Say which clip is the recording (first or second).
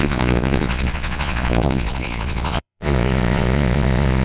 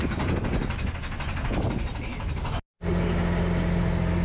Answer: second